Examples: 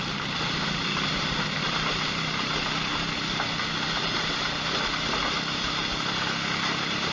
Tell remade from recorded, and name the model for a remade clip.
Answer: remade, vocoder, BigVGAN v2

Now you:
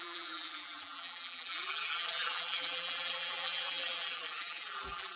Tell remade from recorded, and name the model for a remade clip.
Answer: remade, vocoder, BigVGAN v2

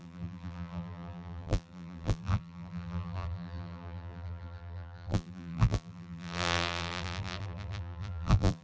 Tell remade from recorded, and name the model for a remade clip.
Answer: remade, vocoder, BigVGAN v2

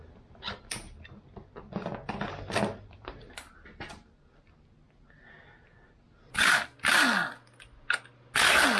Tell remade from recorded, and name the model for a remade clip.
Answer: recorded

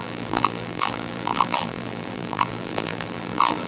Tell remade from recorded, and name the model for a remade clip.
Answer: remade, vocoder, BigVGAN v2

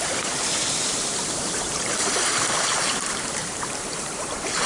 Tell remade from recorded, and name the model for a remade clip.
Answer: remade, vocoder, BigVGAN v2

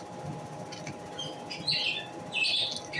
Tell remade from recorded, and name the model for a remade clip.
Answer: recorded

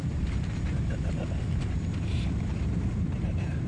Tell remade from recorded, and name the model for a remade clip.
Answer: remade, vocoder, BigVGAN v2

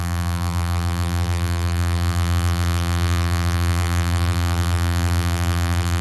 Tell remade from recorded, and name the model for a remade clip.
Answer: remade, vocoder, BigVGAN v2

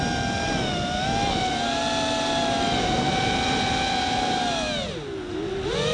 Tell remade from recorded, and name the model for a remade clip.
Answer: recorded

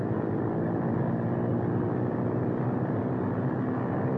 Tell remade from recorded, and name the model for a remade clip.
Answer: recorded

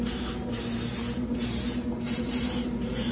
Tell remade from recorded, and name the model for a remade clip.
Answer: remade, vocoder, BigVGAN v2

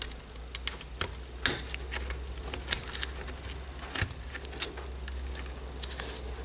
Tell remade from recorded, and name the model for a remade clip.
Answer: recorded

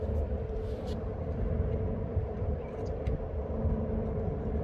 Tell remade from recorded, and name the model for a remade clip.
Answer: remade, vocoder, BigVGAN v2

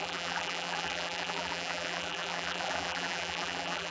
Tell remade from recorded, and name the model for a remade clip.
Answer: remade, vocoder, BigVGAN v2